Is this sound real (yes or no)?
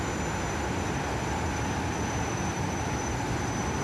yes